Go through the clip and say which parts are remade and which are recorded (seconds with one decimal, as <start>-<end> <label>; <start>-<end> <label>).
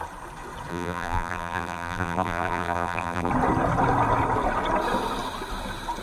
0.0-0.7 recorded; 0.7-3.3 remade; 3.3-6.0 recorded